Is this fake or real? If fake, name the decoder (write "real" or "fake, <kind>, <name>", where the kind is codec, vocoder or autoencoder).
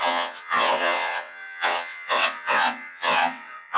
fake, vocoder, WaveNeXt